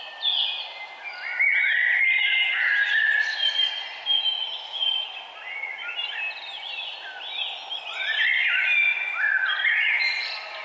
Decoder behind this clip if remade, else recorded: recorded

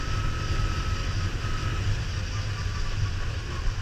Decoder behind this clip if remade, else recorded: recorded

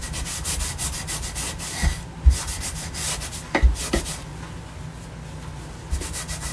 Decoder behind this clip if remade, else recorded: recorded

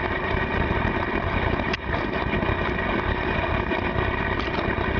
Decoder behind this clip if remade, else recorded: recorded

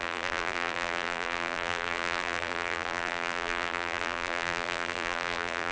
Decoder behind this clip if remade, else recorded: remade, vocoder, BigVGAN v2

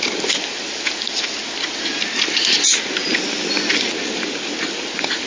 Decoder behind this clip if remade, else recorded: recorded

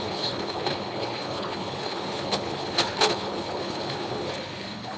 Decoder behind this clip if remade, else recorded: remade, codec, HILCodec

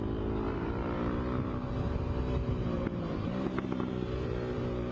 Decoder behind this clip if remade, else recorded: remade, vocoder, BigVGAN v2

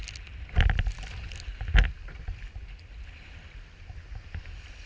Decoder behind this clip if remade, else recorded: recorded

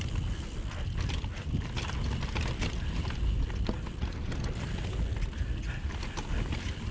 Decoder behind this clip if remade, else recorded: recorded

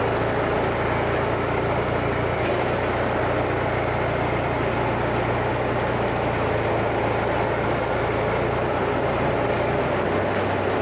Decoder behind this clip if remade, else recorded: recorded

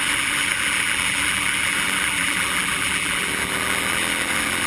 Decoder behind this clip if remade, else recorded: remade, vocoder, BigVGAN v2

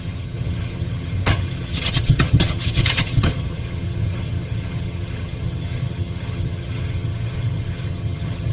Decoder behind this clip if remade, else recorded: remade, vocoder, HiFi-GAN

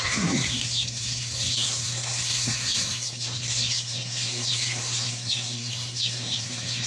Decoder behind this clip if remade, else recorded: remade, codec, SNAC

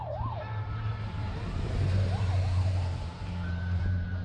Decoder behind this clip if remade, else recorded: remade, vocoder, BigVGAN v2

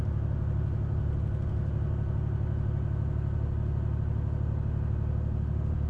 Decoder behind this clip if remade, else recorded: recorded